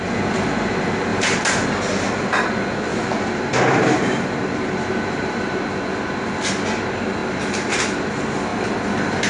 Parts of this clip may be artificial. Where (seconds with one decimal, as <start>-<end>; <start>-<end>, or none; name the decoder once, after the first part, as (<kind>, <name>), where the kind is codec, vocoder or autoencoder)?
1.1-1.7 (vocoder, BigVGAN v2); 2.9-5.6